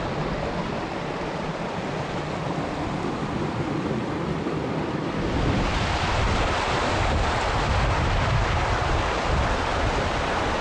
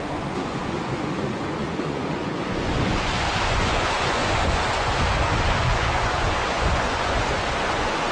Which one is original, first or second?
first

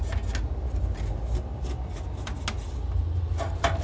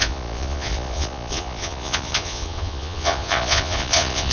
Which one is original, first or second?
first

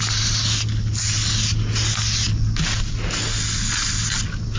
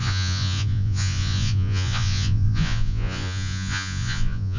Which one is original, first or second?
first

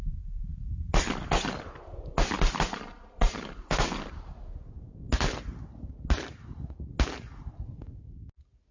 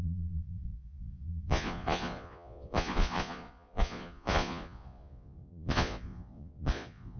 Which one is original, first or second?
first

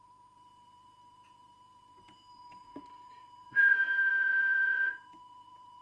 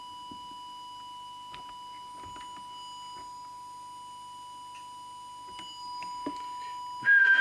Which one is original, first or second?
second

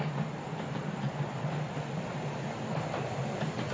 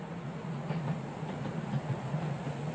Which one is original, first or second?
first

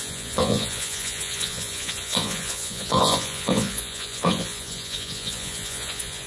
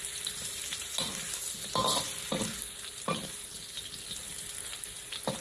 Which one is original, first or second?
second